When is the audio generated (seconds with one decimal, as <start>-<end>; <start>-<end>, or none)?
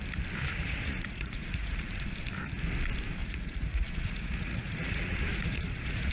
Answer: 0.5-2.1; 3.2-6.1